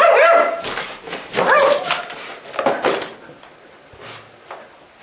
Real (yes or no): yes